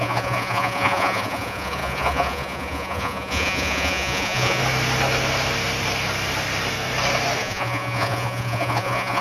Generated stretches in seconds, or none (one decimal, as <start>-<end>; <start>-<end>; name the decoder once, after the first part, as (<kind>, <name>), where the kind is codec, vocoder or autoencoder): 0.0-4.6 (vocoder, Vocos); 7.4-9.2